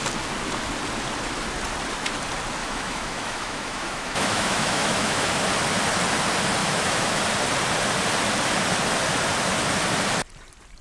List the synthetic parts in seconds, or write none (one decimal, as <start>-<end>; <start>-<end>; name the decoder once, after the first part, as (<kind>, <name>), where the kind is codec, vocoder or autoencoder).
2.6-5.4 (autoencoder, DAC-VAE); 6.6-7.2